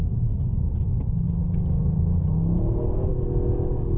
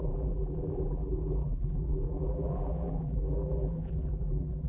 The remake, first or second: second